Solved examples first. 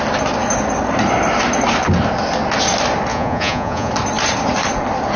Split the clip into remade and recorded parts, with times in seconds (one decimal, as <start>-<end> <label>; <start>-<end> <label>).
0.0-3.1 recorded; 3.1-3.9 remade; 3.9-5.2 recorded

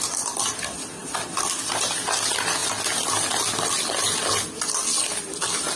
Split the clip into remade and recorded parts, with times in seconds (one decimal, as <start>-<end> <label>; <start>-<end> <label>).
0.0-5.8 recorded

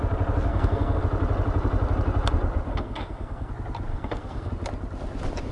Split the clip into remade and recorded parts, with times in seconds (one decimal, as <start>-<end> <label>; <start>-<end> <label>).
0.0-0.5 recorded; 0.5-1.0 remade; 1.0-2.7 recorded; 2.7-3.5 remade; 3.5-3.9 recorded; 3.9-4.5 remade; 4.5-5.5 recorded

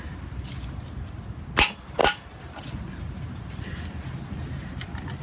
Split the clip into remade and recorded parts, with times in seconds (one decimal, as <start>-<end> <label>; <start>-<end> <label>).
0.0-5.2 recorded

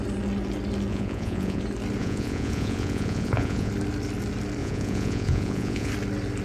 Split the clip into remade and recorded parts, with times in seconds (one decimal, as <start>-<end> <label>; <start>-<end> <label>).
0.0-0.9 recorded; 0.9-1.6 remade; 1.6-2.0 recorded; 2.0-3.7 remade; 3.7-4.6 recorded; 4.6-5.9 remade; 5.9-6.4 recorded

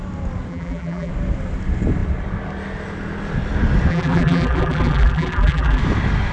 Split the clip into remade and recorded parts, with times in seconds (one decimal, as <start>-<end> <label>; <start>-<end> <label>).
0.0-0.5 recorded; 0.5-1.1 remade; 1.1-3.9 recorded; 3.9-5.8 remade; 5.8-6.3 recorded

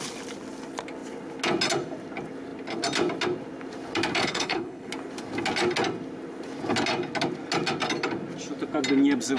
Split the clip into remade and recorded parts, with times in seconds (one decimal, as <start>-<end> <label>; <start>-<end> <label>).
0.0-4.2 recorded; 4.2-4.9 remade; 4.9-9.4 recorded